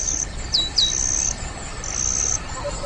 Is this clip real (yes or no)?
yes